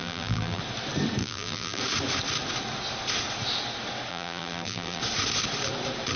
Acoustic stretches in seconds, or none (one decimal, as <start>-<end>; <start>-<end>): 0.6-1.2; 1.8-4.1; 5.0-6.2